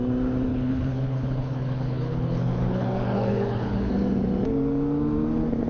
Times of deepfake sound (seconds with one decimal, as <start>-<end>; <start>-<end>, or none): 0.5-3.9